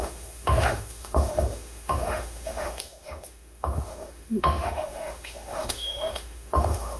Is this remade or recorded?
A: remade